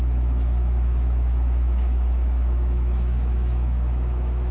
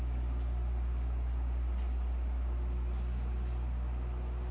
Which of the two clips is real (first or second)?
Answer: second